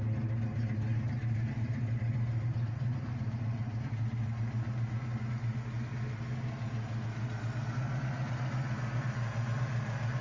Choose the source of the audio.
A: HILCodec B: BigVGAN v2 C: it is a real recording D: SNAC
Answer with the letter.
C